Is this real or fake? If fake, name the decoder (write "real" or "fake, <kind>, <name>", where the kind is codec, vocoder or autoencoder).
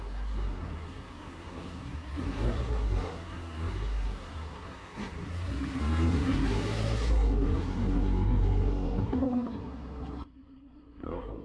fake, codec, SNAC